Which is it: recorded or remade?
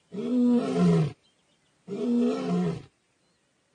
recorded